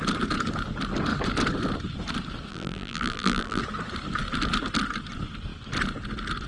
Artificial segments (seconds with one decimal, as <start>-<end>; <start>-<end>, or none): 2.5-3.6